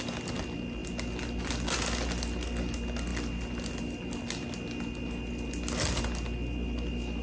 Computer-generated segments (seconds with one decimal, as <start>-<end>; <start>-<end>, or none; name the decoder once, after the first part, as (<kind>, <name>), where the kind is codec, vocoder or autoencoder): none